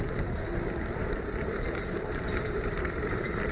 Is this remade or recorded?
remade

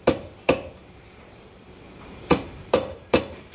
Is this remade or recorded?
remade